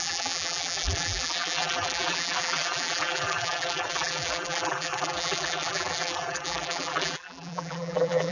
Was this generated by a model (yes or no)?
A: yes